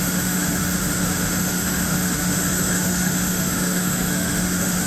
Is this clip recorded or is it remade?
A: remade